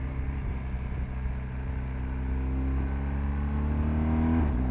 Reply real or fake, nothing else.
real